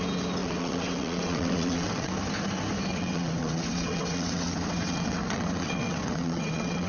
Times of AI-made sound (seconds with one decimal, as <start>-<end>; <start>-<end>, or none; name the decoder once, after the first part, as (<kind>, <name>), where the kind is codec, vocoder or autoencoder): 0.4-2.1 (vocoder, WaveNeXt); 2.9-6.9